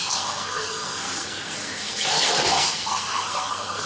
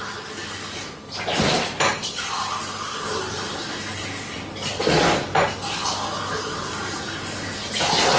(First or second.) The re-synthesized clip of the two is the first